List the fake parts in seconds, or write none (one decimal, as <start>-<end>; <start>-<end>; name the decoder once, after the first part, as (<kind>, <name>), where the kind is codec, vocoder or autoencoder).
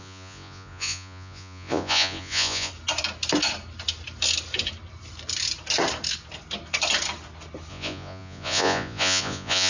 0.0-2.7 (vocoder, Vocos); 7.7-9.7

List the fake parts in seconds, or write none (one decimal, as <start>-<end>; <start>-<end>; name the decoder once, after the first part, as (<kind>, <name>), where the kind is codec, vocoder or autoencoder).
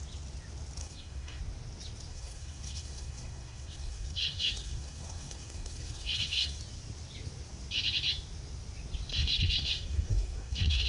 0.8-1.4 (codec, SNAC); 2.1-6.6; 9.1-10.9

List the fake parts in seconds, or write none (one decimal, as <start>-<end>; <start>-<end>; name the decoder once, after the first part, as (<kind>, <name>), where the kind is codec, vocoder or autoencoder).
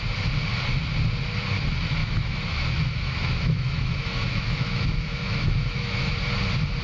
2.0-6.1 (autoencoder, DAC-VAE)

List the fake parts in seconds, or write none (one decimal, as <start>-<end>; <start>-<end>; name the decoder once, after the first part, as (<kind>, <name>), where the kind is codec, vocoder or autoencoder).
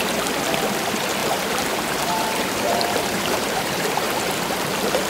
1.2-4.3 (vocoder, BigVGAN v2)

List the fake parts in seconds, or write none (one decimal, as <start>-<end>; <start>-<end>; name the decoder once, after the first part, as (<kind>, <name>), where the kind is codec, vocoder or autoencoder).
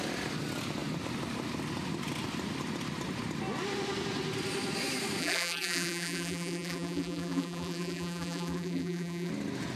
5.2-9.3 (vocoder, BigVGAN v2)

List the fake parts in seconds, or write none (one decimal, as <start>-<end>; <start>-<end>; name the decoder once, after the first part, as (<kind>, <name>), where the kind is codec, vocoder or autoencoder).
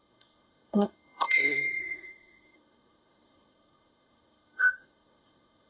0.0-5.7 (codec, SNAC)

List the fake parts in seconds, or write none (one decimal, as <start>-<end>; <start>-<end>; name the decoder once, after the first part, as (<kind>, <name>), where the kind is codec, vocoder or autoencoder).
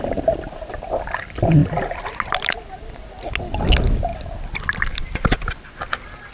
none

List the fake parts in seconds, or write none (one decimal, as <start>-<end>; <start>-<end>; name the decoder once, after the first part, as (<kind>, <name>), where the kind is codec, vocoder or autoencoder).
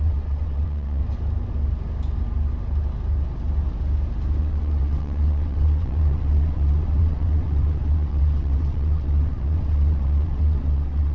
0.0-1.0 (vocoder, WaveNeXt); 4.4-11.1